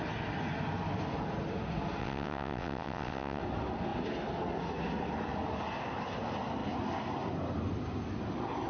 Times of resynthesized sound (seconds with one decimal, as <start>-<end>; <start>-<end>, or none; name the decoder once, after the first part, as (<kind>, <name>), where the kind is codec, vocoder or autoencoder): 2.0-3.4 (vocoder, WaveNeXt)

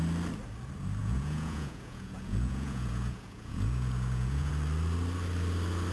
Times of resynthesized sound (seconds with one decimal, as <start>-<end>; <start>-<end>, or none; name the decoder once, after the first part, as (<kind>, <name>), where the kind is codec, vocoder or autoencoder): 1.0-4.5 (vocoder, Vocos)

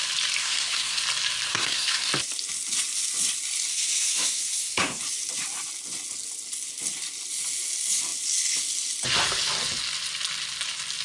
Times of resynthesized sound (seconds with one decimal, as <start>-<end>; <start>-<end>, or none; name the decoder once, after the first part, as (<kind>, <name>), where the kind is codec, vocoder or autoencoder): 0.4-1.0 (codec, SNAC); 1.5-2.1; 3.7-5.0

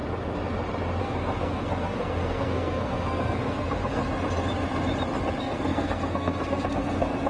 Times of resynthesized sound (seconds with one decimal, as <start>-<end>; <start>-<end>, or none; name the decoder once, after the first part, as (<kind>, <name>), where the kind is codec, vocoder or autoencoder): 1.0-4.0 (codec, SNAC); 5.4-7.3